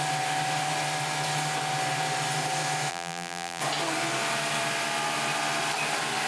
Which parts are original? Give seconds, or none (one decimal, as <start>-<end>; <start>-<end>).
0.0-2.9; 3.6-6.3